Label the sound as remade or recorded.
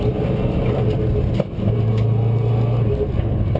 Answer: recorded